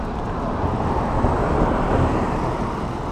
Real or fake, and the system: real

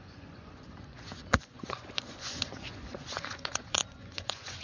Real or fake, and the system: fake, vocoder, Vocos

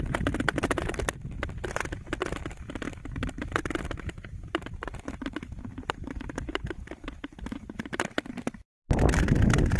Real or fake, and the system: real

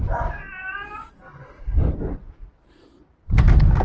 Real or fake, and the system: real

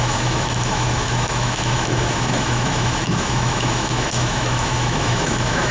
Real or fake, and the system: fake, autoencoder, DAC-VAE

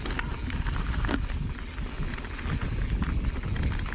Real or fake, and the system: real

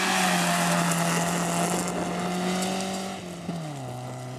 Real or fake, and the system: real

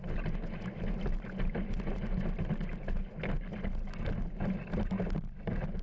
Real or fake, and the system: real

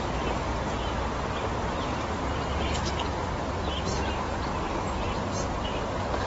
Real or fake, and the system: real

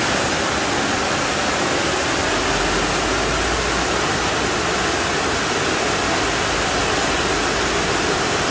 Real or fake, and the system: real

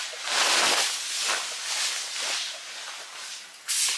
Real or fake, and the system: real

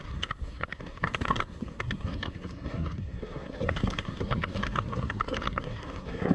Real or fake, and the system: fake, codec, SNAC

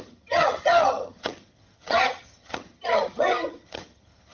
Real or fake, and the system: fake, vocoder, HiFi-GAN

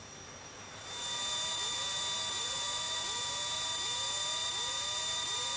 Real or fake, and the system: fake, vocoder, BigVGAN v2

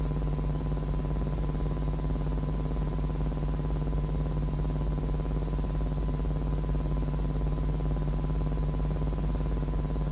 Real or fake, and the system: real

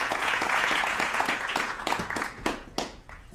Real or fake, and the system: fake, vocoder, Vocos